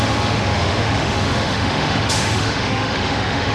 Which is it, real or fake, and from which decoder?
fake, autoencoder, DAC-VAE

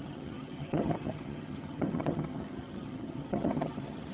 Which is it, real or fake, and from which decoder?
fake, vocoder, HiFi-GAN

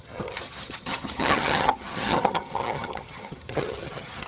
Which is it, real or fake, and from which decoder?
fake, vocoder, HiFi-GAN